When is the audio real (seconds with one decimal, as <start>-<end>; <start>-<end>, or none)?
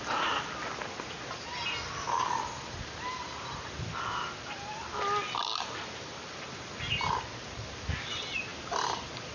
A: 0.0-9.3